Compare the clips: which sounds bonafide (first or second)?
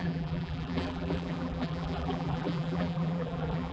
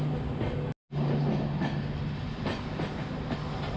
second